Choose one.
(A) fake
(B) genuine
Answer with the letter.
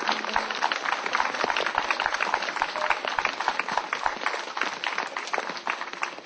B